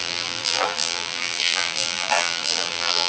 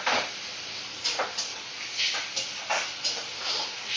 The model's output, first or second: first